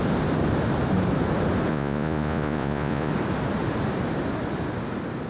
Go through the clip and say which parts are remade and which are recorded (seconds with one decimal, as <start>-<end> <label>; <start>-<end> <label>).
0.0-1.7 recorded; 1.7-3.1 remade; 3.1-5.3 recorded